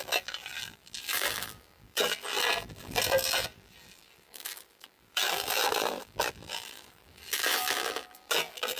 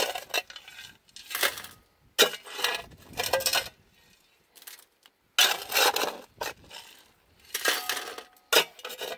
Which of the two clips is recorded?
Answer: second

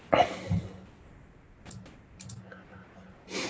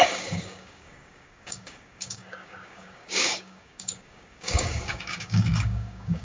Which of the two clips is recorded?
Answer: first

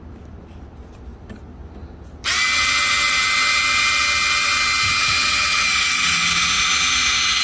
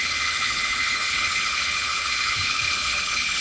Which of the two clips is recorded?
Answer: first